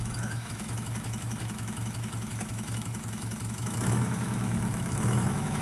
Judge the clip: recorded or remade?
remade